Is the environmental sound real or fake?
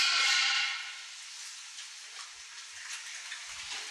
real